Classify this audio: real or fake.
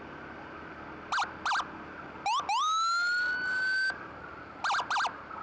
real